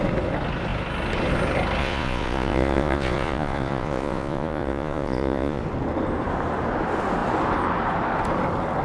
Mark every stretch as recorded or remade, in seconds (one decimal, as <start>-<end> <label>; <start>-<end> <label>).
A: 0.0-1.8 recorded; 1.8-5.6 remade; 5.6-8.8 recorded